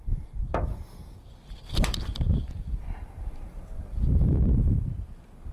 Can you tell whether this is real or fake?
fake